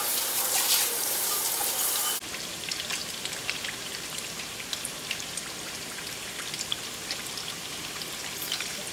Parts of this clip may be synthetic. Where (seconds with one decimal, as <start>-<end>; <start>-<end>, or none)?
0.0-1.6; 2.3-8.9